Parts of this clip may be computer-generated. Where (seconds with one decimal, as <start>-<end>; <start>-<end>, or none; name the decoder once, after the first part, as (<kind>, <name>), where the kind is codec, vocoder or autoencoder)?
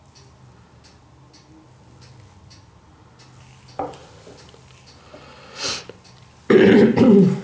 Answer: none